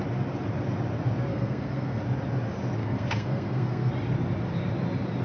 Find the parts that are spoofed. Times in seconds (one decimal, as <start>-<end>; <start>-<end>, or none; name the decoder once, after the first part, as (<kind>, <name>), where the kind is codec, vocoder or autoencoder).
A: 1.3-2.0 (codec, SNAC); 2.8-3.9